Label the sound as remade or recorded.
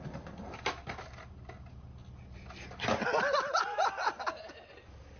recorded